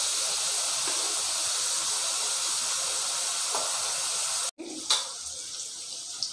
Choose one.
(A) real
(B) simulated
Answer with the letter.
A